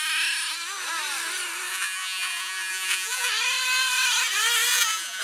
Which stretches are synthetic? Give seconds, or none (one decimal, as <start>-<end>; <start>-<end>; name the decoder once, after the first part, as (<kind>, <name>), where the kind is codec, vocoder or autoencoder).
1.7-3.3 (vocoder, Vocos); 4.7-5.2

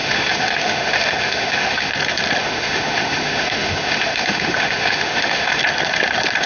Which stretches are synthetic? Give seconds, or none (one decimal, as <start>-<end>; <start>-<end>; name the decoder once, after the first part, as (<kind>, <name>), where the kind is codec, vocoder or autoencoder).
0.0-1.9 (autoencoder, DAC-VAE); 2.4-5.6

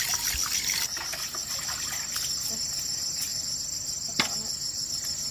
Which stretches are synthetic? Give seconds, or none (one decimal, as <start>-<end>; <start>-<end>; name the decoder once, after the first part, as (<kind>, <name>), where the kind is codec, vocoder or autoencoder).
3.3-4.1 (vocoder, BigVGAN v2)

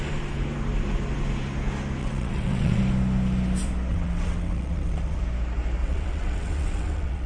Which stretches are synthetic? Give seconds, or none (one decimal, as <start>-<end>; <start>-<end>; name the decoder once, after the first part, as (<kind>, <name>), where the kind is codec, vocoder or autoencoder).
2.0-2.8 (vocoder, WaveNeXt); 3.9-5.2; 5.8-7.3

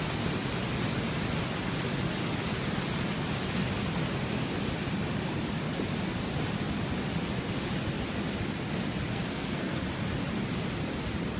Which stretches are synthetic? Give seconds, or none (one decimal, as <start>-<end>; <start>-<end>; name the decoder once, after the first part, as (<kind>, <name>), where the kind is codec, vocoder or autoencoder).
9.1-9.8 (codec, SNAC)

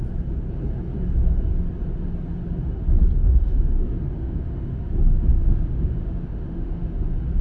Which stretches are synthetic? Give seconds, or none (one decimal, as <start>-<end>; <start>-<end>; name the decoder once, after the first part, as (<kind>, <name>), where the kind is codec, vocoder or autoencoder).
3.2-4.8 (autoencoder, DAC-VAE); 5.3-6.9

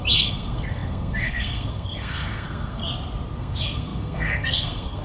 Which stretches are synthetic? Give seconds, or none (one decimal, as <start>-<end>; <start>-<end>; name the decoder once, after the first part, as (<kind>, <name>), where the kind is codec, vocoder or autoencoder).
0.0-2.8 (codec, SNAC); 3.4-5.0

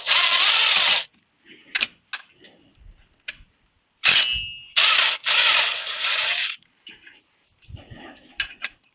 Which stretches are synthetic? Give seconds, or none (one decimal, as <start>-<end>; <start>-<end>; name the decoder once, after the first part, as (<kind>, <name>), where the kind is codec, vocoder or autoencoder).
0.0-0.6 (vocoder, BigVGAN v2); 5.5-8.9